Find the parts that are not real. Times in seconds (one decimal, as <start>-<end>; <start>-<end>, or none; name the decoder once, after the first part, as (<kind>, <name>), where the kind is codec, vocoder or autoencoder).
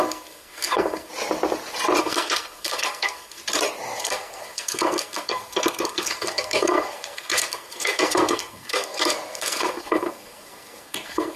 0.0-1.1 (codec, SNAC); 2.0-3.4; 4.0-11.4